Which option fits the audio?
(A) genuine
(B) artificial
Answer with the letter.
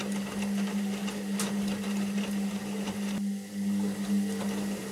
A